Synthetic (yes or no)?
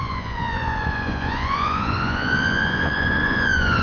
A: yes